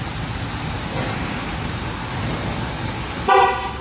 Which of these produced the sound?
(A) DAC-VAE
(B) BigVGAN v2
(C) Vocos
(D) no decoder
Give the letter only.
D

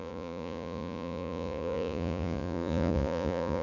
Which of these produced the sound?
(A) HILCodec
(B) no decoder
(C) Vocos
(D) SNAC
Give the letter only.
C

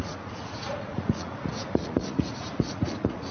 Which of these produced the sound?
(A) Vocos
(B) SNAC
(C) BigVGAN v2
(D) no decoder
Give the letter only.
A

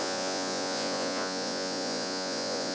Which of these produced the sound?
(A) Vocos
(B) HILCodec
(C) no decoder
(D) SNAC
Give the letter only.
A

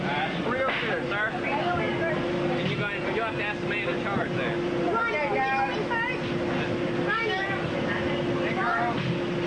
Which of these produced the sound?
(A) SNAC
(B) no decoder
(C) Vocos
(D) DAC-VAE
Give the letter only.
B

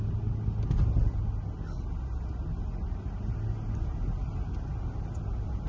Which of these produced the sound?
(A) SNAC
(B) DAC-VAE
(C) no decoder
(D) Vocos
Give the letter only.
C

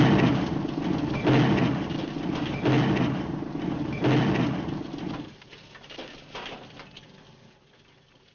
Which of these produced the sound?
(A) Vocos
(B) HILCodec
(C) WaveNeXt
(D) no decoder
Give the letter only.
D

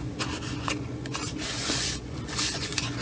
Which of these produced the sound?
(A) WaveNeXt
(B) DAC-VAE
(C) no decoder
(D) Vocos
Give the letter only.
D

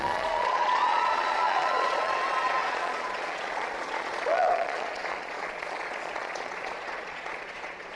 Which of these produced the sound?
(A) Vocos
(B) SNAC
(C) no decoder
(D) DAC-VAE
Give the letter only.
A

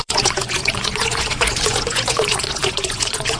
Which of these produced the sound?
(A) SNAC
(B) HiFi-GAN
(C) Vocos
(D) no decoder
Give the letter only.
C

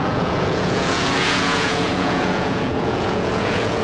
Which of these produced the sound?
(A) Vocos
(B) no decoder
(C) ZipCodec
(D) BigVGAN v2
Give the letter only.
A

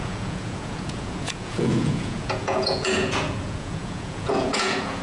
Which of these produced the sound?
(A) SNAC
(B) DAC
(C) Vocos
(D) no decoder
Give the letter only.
C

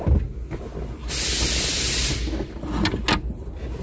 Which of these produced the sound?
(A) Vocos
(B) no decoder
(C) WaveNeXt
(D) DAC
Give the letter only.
B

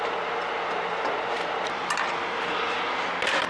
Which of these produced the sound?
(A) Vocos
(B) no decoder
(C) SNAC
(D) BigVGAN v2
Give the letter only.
B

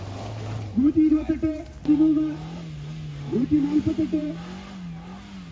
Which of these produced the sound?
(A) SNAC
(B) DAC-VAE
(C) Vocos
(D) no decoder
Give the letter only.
D